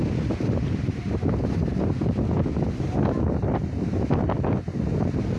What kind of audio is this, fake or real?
real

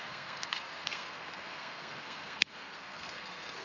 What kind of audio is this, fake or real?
fake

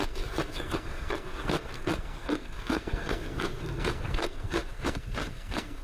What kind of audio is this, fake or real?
fake